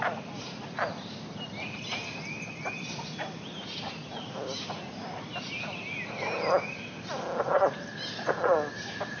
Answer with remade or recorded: recorded